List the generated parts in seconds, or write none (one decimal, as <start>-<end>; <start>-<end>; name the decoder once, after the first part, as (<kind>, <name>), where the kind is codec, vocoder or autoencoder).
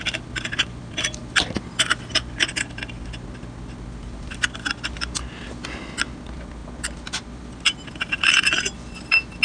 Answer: none